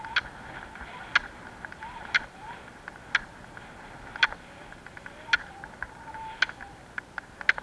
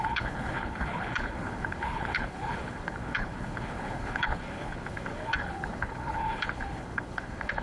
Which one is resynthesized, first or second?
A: second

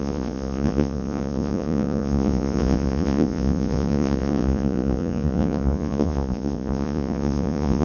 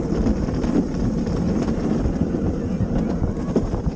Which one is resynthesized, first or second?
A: first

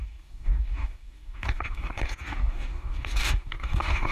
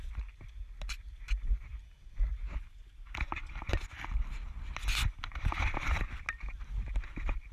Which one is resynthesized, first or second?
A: first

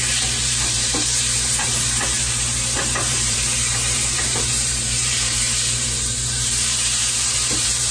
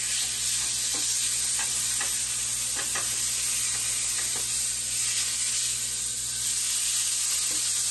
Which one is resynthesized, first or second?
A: first